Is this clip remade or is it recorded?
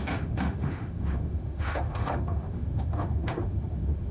remade